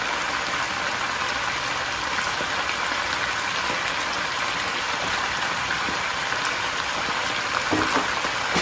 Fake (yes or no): no